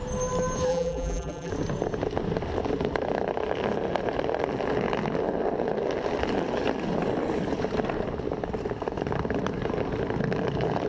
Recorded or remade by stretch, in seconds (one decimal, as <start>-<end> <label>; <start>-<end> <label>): 0.0-0.7 recorded; 0.7-1.5 remade; 1.5-10.9 recorded